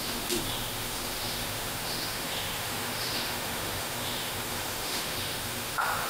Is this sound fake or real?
fake